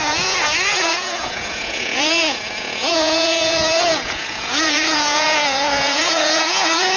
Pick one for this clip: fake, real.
fake